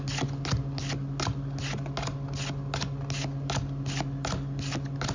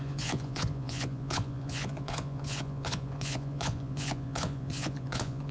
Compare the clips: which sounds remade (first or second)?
second